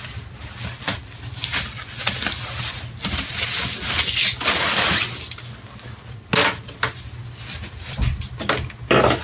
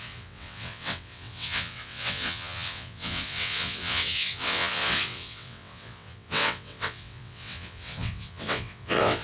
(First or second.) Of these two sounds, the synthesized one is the second